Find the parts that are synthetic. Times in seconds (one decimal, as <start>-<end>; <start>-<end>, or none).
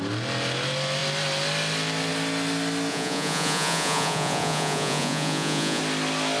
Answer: 2.9-5.8